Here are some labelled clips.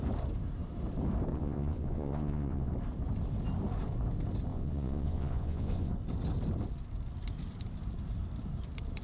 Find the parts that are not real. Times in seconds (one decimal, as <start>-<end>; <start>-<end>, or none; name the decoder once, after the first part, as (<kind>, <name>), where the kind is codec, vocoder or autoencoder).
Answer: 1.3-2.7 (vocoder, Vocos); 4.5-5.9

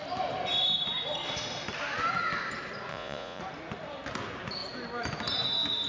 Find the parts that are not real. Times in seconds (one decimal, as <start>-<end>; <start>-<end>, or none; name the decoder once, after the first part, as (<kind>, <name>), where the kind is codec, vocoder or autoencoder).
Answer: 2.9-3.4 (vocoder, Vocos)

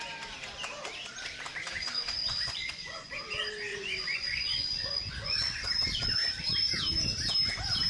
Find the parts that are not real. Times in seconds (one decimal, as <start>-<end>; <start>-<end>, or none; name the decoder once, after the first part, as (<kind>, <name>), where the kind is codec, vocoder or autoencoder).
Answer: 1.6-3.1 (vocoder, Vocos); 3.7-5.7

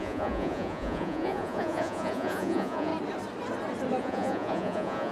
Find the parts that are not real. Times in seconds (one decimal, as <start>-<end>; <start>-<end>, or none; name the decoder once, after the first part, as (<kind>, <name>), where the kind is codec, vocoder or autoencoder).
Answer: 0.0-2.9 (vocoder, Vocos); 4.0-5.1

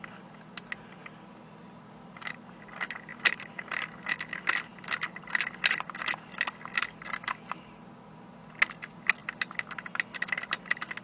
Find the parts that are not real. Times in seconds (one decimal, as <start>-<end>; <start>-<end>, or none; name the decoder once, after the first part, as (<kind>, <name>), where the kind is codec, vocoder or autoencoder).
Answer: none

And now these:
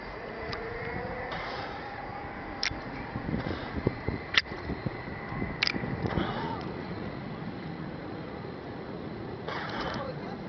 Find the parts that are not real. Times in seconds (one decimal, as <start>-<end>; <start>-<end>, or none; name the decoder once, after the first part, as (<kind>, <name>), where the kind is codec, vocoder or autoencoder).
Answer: 0.0-2.1 (vocoder, Vocos); 2.8-5.1; 6.0-10.5